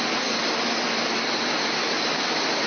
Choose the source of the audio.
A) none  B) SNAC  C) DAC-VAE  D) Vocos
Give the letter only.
A